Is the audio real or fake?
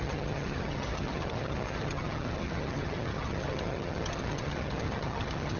fake